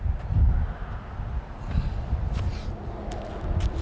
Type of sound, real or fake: real